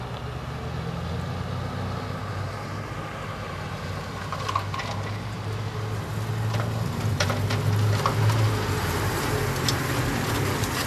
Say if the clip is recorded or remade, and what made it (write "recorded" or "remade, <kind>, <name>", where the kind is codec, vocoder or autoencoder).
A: recorded